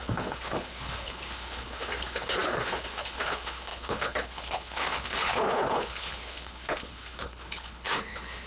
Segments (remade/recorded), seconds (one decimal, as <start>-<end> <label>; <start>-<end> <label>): 0.0-8.5 remade